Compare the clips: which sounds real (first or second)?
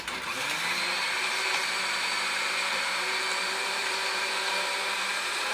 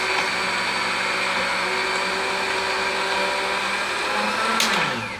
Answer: second